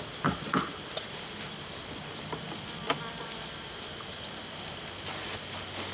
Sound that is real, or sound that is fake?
real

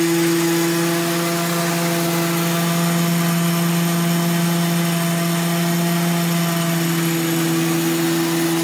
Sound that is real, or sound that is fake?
real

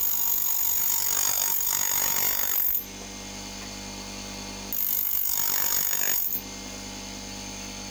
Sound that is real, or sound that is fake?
real